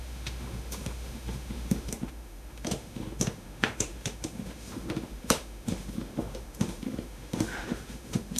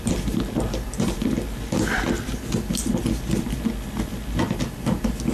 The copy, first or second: first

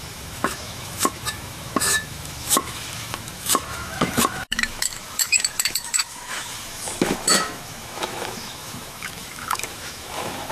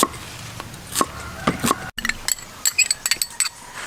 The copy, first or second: first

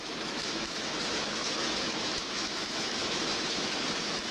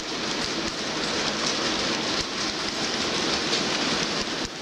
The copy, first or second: first